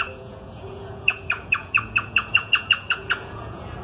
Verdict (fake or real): fake